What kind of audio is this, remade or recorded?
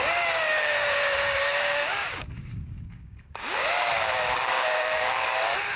remade